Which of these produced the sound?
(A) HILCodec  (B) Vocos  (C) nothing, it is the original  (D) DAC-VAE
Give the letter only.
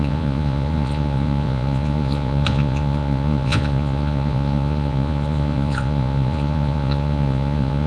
B